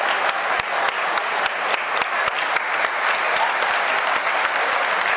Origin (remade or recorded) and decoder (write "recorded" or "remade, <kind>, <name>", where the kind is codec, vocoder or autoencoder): recorded